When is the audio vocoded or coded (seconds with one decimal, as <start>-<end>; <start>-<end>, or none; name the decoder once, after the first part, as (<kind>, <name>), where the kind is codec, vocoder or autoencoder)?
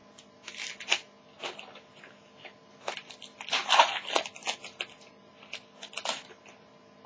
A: none